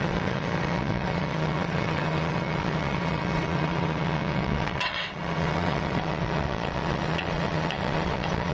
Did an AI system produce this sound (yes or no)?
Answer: yes